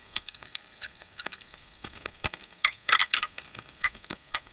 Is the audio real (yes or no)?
no